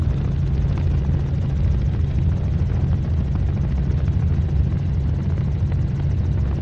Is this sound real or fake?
real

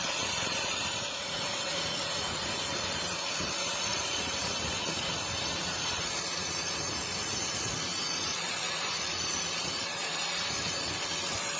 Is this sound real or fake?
fake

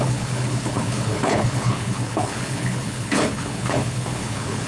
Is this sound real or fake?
fake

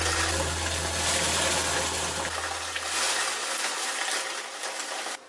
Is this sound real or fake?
real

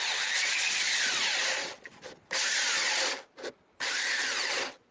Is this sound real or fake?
real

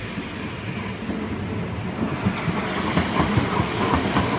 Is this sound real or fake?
real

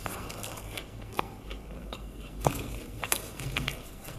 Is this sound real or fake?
fake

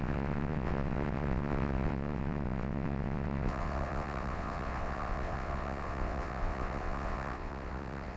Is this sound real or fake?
fake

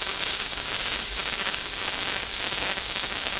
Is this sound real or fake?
fake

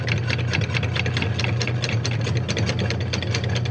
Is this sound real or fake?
real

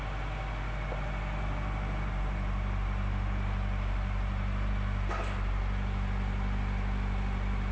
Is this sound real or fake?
real